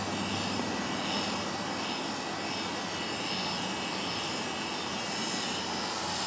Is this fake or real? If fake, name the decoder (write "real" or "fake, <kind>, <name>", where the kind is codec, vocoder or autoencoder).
real